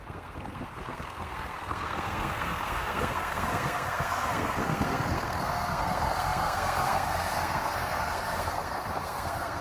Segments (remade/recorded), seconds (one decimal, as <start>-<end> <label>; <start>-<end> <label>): 0.0-9.6 remade